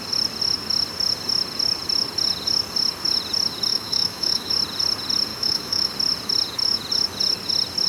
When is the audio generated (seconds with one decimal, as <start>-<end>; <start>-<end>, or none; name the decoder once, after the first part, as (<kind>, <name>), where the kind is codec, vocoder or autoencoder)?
3.7-4.5 (autoencoder, DAC-VAE); 5.3-5.9